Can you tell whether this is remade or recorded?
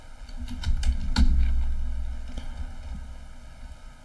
recorded